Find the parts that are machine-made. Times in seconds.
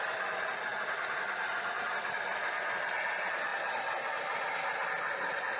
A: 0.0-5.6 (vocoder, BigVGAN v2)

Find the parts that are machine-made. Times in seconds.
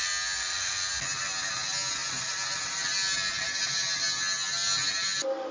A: none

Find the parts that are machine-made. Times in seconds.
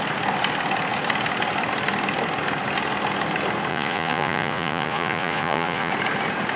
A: 3.7-5.9 (vocoder, Vocos)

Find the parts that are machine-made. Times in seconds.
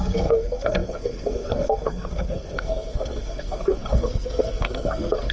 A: 0.0-5.3 (codec, SNAC)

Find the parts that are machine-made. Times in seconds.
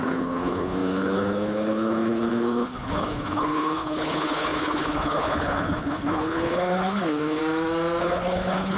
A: 0.0-7.4 (codec, HILCodec); 8.0-8.8